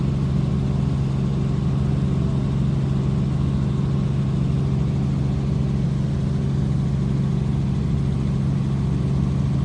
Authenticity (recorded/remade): recorded